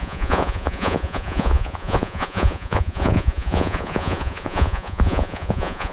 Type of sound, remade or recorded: remade